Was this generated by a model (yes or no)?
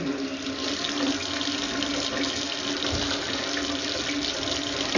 no